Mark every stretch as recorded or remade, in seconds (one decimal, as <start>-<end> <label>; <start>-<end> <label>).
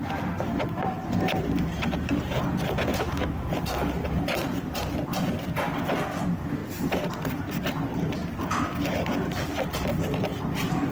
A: 0.0-2.9 recorded; 2.9-3.5 remade; 3.5-10.9 recorded